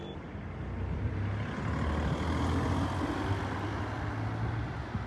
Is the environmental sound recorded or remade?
recorded